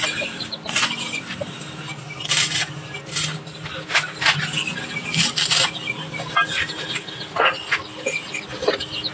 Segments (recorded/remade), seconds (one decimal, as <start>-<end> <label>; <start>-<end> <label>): 0.0-9.1 recorded